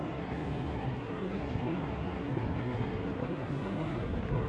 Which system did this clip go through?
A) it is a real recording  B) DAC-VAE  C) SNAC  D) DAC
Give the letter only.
C